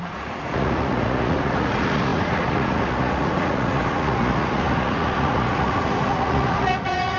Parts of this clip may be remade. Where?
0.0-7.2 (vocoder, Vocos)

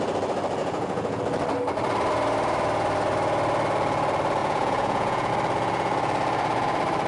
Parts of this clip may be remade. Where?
0.6-1.2 (vocoder, Vocos); 4.4-5.3

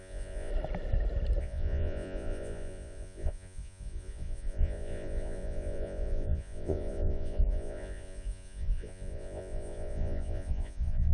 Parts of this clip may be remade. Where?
0.0-0.5 (vocoder, Vocos); 1.4-11.1

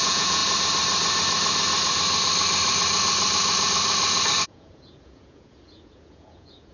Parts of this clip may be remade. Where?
0.0-0.4 (vocoder, Vocos); 4.4-6.7

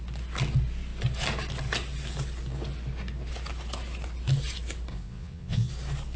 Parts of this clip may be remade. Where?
4.9-5.7 (vocoder, Vocos)

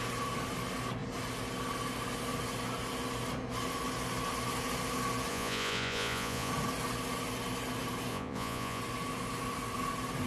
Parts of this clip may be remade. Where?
5.3-6.5 (vocoder, Vocos); 8.1-8.8

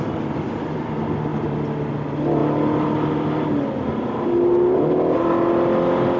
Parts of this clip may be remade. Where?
none